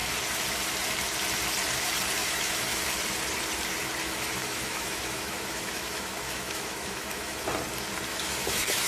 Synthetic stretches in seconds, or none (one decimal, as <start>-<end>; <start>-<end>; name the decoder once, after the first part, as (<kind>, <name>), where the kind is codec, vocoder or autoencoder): 2.2-2.8 (autoencoder, DAC-VAE); 4.0-7.4; 8.1-8.9